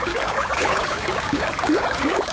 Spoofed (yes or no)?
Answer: yes